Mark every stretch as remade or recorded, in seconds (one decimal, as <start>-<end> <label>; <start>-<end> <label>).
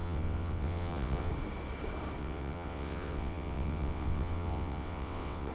0.0-1.3 remade; 1.3-2.2 recorded; 2.2-5.5 remade